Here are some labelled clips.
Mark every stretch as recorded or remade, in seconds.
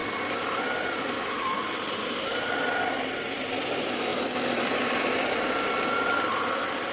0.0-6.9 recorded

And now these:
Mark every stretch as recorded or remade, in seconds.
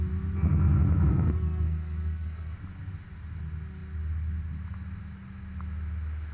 0.0-1.1 recorded; 1.1-2.6 remade; 2.6-6.3 recorded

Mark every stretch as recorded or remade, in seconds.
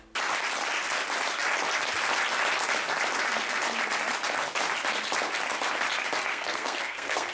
0.0-6.3 recorded; 6.3-7.3 remade